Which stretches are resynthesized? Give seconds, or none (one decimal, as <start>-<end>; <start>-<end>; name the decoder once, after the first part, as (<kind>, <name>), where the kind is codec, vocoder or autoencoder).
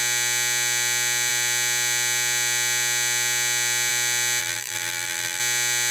4.4-5.4 (vocoder, BigVGAN v2)